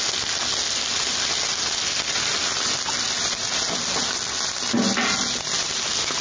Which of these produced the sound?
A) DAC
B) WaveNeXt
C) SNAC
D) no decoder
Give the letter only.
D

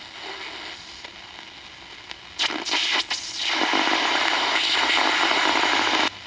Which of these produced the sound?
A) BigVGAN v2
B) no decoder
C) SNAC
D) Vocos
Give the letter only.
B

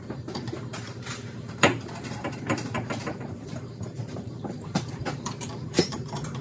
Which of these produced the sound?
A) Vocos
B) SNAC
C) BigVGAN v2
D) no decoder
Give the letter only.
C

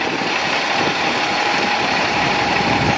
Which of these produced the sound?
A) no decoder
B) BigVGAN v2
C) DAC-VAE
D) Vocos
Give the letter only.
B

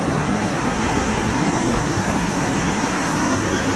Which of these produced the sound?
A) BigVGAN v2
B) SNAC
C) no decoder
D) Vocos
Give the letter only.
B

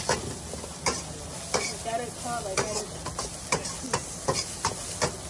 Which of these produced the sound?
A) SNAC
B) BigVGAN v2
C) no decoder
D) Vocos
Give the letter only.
C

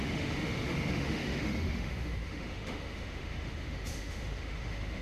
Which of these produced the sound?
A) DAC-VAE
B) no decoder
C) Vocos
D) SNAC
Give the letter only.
A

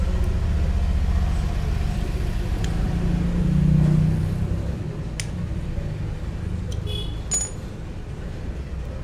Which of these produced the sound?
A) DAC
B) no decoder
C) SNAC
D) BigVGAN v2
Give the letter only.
B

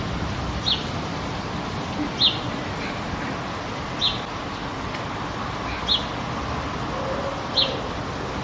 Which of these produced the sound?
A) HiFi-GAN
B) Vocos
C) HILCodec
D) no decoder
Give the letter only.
D